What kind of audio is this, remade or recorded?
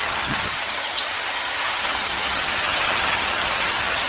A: remade